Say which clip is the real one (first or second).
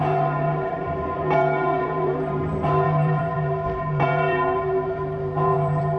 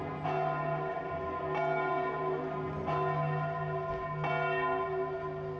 second